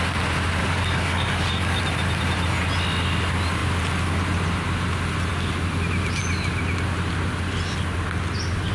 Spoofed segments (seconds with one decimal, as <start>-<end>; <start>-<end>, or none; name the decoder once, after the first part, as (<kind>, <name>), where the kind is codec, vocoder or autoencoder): 0.6-1.8 (codec, DAC)